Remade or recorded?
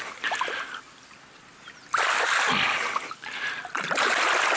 recorded